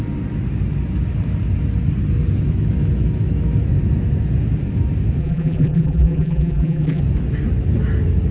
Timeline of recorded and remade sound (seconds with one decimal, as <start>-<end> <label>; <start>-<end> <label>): 0.0-5.2 recorded; 5.2-7.0 remade; 7.0-8.3 recorded